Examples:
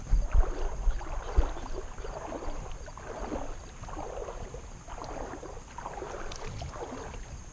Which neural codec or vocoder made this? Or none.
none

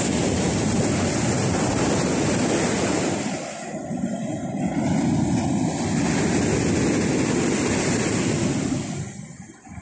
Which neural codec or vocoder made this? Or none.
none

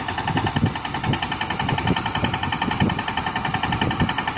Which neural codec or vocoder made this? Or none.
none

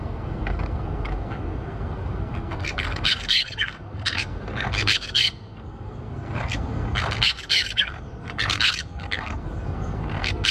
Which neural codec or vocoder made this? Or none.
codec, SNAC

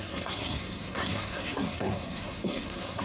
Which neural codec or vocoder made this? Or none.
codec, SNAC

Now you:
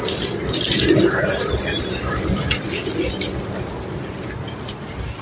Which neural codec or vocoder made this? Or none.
none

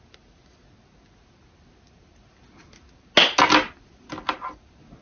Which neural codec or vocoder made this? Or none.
none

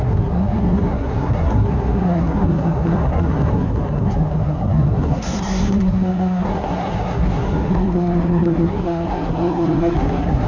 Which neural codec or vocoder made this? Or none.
codec, SNAC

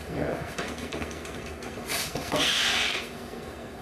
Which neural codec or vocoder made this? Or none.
codec, SNAC